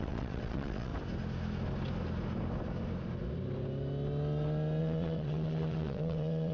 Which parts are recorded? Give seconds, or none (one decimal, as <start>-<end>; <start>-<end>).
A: 0.9-4.8